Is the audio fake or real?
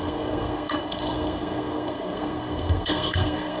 fake